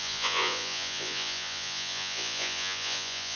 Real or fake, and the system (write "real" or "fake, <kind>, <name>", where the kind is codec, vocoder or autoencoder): fake, vocoder, Vocos